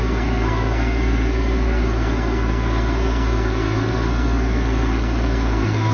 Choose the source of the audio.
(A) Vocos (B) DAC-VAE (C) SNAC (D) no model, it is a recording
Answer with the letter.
C